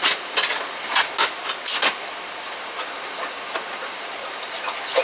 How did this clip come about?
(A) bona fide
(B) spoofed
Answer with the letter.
A